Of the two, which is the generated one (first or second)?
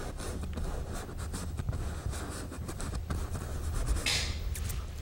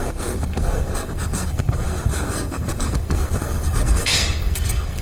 second